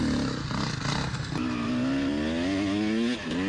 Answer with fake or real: real